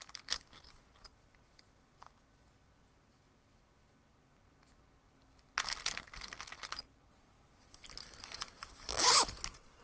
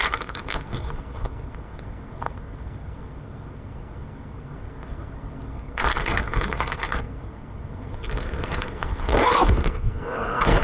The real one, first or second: first